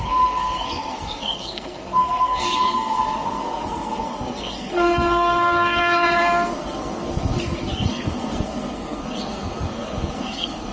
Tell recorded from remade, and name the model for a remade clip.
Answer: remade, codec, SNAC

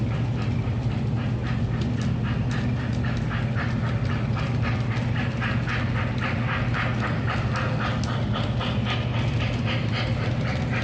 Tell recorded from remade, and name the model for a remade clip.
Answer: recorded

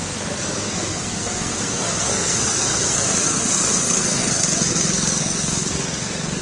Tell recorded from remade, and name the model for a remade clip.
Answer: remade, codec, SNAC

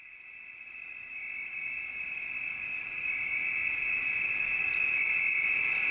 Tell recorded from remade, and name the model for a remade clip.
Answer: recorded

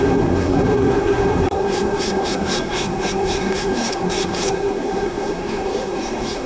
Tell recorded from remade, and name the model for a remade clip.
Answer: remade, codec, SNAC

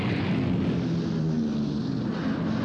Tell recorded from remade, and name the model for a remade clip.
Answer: recorded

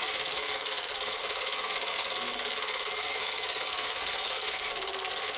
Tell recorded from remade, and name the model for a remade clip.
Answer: remade, codec, SNAC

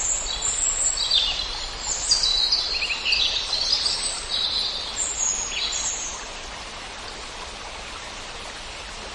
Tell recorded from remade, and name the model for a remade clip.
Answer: recorded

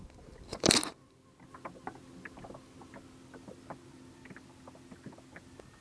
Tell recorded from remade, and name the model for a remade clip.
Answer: recorded